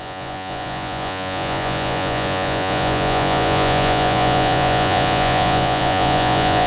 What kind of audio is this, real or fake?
fake